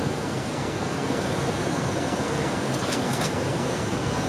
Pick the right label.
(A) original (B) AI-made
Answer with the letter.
B